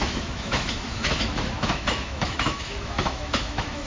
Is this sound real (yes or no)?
no